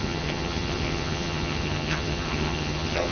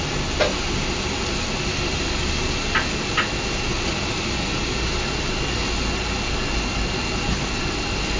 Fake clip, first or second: first